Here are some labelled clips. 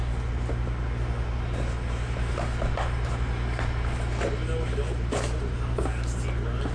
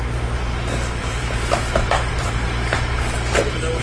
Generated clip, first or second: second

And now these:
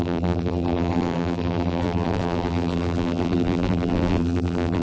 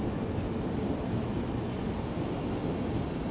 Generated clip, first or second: first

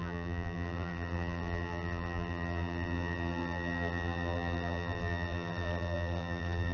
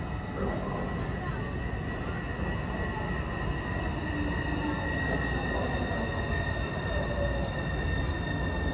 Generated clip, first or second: first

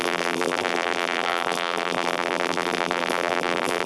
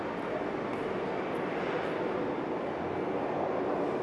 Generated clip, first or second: first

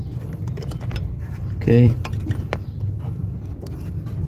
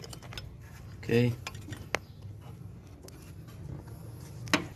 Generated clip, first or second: first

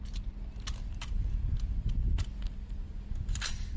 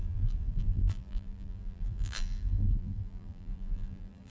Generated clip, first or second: second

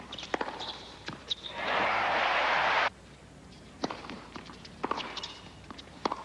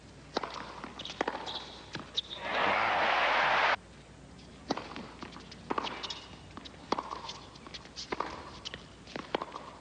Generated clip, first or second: first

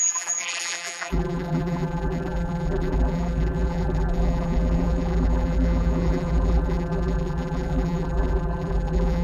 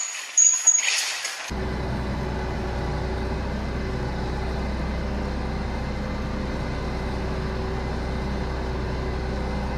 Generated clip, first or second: first